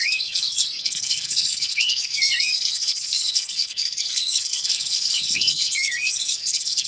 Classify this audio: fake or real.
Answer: fake